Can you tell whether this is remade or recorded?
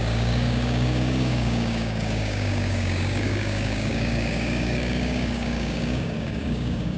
remade